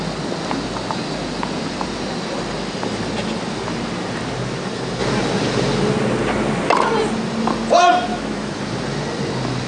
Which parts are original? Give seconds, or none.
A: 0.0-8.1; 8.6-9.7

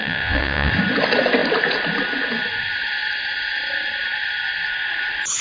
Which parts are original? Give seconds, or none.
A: 0.7-5.4

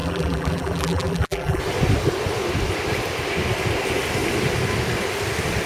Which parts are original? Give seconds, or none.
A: 1.6-5.7

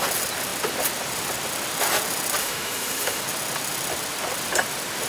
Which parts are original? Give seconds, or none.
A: 0.0-2.4; 3.2-5.1

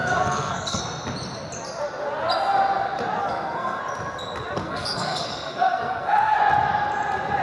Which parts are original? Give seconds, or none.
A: 0.8-3.2; 3.8-4.6; 6.4-7.4